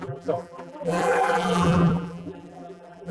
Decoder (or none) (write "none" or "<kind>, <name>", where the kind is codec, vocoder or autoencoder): vocoder, BigVGAN v2